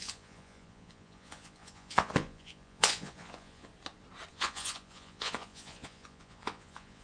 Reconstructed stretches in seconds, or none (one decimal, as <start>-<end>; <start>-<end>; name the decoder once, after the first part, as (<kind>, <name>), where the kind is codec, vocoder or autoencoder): 0.0-3.7 (vocoder, Vocos); 4.3-7.0